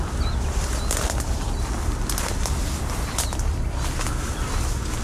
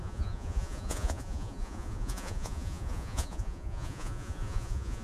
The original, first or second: first